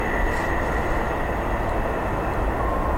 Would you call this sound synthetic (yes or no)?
no